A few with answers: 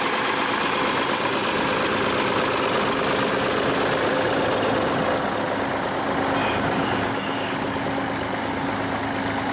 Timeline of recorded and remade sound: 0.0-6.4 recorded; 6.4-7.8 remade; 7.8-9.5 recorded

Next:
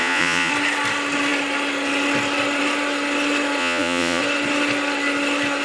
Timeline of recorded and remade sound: 0.0-0.5 remade; 0.5-3.6 recorded; 3.6-4.2 remade; 4.2-5.6 recorded

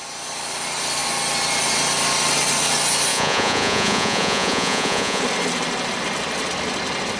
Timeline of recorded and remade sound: 0.0-3.1 recorded; 3.1-5.2 remade; 5.2-7.2 recorded

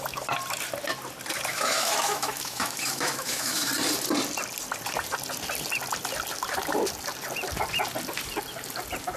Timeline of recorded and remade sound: 0.0-1.5 recorded; 1.5-3.7 remade; 3.7-9.2 recorded

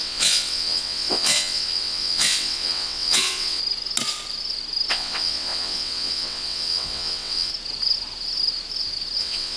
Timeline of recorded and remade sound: 0.0-3.6 remade; 3.6-4.9 recorded; 4.9-7.5 remade; 7.5-9.2 recorded; 9.2-9.6 remade

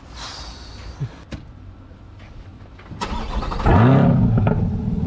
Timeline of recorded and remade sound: 0.0-5.1 recorded